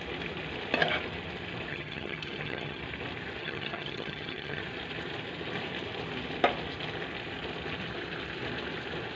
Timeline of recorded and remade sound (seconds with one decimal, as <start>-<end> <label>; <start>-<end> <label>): 0.0-1.7 recorded; 1.7-2.8 remade; 2.8-3.4 recorded; 3.4-4.6 remade; 4.6-9.2 recorded